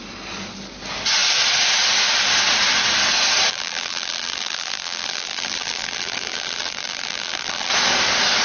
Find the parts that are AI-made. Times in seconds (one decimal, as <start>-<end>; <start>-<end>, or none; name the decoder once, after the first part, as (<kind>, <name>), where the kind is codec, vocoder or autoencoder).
3.5-7.7 (vocoder, BigVGAN v2)